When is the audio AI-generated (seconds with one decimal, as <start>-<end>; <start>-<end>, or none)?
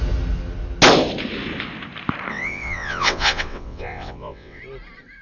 2.3-4.6